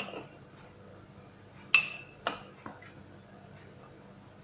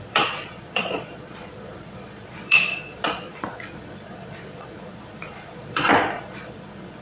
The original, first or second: first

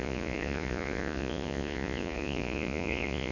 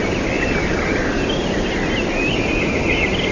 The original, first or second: second